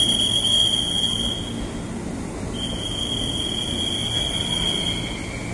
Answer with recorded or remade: recorded